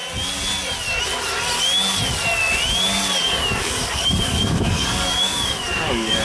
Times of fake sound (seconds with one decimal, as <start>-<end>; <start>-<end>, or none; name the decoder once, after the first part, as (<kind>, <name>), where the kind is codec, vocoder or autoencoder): 3.6-6.2 (codec, DAC)